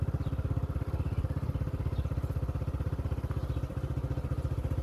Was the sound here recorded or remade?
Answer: recorded